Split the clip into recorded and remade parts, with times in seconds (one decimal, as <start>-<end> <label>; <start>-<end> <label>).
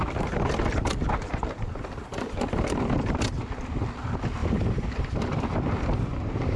0.0-4.4 recorded; 4.4-5.2 remade; 5.2-6.1 recorded; 6.1-6.6 remade